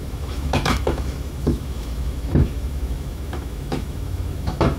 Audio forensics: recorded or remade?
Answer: remade